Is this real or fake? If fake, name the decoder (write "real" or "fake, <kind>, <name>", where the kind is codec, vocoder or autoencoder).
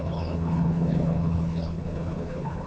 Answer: fake, codec, HILCodec